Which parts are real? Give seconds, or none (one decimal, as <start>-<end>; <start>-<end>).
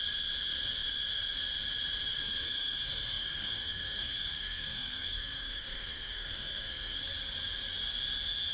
0.0-2.2; 7.0-8.5